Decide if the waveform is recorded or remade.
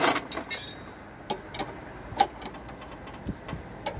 recorded